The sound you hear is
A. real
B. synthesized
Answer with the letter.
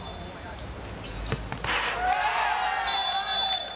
A